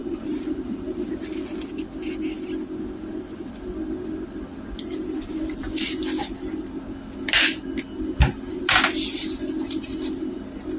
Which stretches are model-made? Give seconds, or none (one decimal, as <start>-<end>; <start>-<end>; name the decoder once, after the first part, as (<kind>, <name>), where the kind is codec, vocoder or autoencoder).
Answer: 0.0-1.1 (vocoder, BigVGAN v2)